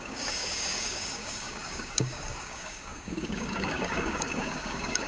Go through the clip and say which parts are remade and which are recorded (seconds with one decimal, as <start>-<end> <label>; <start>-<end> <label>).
0.0-5.1 remade